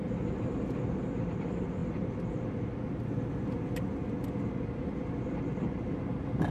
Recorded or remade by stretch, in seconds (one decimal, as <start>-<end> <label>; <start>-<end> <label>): 0.0-6.5 recorded